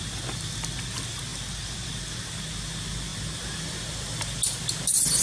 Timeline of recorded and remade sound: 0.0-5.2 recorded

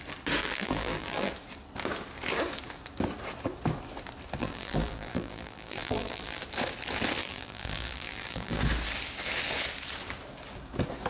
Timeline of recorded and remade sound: 0.0-0.4 recorded; 0.4-1.3 remade; 1.3-4.4 recorded; 4.4-6.4 remade; 6.4-7.2 recorded; 7.2-8.6 remade; 8.6-11.1 recorded

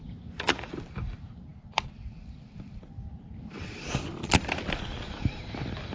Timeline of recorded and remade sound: 0.0-5.9 remade

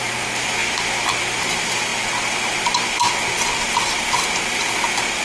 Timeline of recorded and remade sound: 0.0-0.6 remade; 0.6-1.4 recorded; 1.4-1.9 remade; 1.9-5.2 recorded

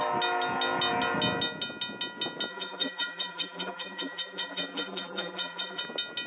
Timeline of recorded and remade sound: 0.0-2.5 recorded; 2.5-5.8 remade; 5.8-6.3 recorded

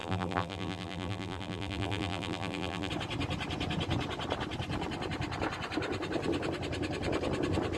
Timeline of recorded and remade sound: 0.0-2.9 remade; 2.9-7.8 recorded

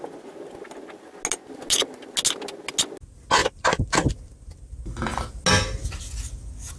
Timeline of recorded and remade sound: 0.0-3.4 recorded; 3.4-3.9 remade; 3.9-6.8 recorded